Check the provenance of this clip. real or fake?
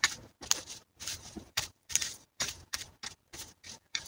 fake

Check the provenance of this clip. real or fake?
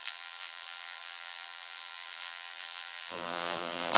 fake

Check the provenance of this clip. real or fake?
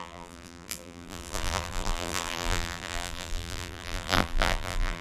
fake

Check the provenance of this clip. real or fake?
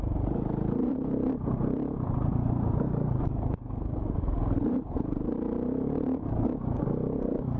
fake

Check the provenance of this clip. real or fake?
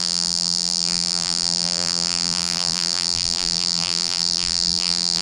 fake